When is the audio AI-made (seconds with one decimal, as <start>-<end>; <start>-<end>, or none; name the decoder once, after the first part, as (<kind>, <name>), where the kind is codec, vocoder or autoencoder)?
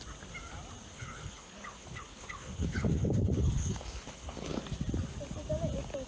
0.9-4.6 (codec, HILCodec)